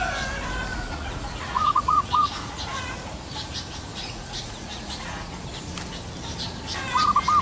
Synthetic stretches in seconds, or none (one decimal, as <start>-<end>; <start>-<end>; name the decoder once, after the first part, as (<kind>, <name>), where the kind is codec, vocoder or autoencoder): 0.7-3.1 (vocoder, Vocos); 3.9-5.3